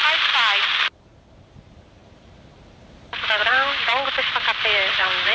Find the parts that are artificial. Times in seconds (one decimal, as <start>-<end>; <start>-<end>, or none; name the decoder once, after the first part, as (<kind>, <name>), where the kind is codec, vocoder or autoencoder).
1.3-5.3 (vocoder, BigVGAN v2)